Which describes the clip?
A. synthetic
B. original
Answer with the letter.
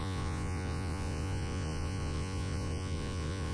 A